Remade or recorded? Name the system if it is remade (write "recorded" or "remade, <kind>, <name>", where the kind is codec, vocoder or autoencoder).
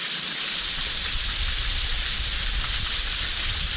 recorded